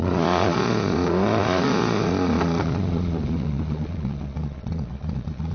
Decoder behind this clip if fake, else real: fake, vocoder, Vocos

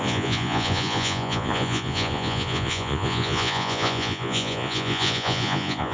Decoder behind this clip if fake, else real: fake, vocoder, Vocos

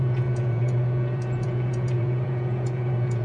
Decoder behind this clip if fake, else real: fake, vocoder, Vocos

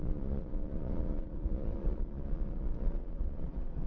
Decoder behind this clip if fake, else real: fake, vocoder, Vocos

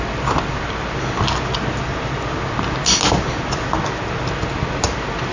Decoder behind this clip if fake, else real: real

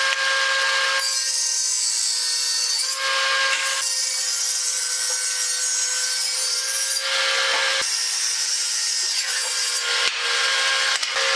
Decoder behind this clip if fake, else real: real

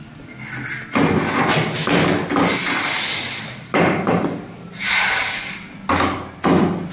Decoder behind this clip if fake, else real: real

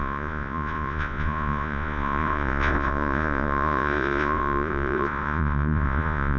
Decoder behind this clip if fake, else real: fake, vocoder, Vocos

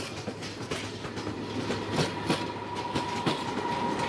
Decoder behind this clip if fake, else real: real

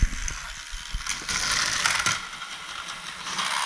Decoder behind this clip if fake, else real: real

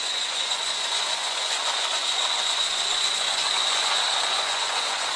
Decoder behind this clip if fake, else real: fake, vocoder, Vocos